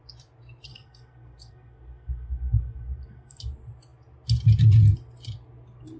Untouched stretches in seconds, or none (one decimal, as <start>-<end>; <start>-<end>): 0.0-0.7; 3.4-6.0

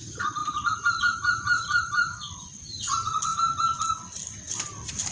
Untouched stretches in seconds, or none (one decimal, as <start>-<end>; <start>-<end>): 0.0-5.1